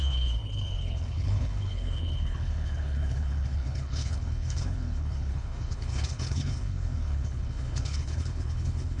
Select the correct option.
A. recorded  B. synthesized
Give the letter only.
B